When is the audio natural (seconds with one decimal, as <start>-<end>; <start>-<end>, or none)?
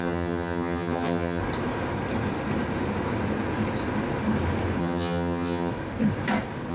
1.4-4.8; 5.7-6.7